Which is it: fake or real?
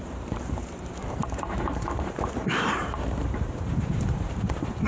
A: fake